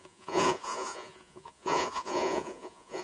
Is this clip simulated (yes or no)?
yes